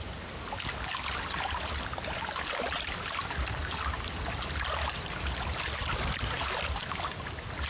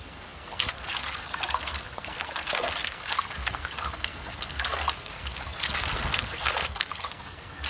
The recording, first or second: first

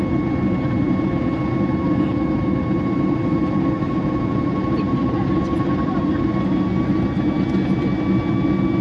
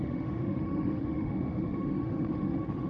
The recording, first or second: first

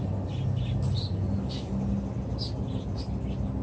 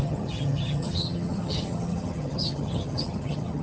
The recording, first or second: first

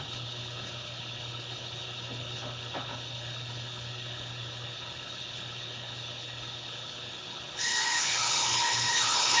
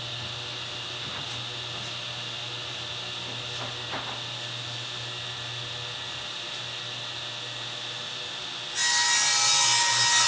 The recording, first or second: second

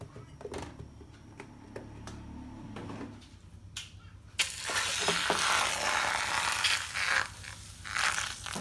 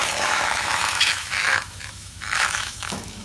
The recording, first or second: first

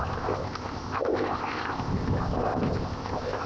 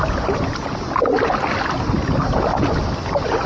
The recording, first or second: second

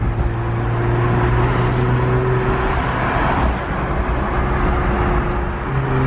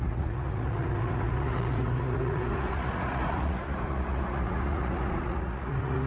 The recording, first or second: first